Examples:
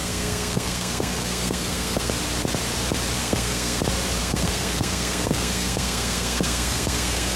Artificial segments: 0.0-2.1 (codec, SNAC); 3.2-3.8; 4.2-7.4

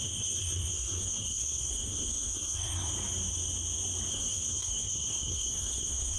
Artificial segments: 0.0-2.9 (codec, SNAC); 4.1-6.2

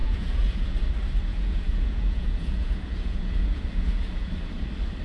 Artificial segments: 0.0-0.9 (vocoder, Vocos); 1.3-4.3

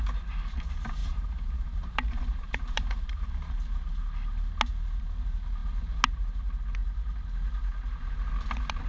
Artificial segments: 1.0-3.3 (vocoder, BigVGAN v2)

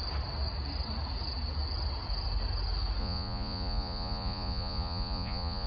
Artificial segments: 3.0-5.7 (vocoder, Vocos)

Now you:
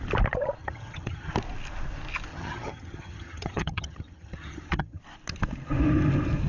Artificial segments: 0.6-1.3 (vocoder, HiFi-GAN); 2.3-5.0

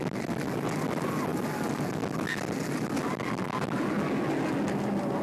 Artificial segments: none

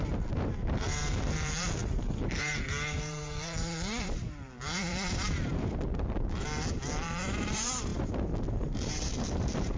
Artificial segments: 0.0-9.8 (vocoder, BigVGAN v2)